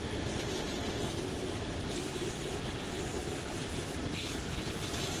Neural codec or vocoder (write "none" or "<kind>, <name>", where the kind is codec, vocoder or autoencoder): none